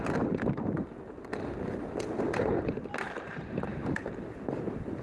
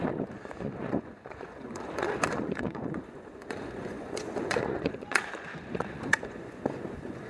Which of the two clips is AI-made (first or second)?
second